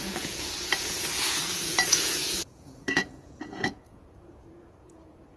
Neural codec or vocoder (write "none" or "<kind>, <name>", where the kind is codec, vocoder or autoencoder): vocoder, Vocos